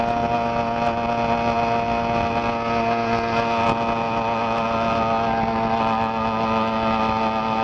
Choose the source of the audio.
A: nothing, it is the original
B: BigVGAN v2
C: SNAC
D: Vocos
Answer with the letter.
A